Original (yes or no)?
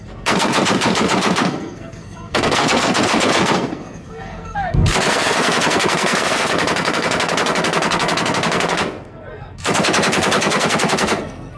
no